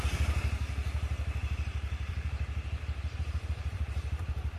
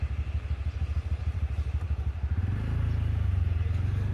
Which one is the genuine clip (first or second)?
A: second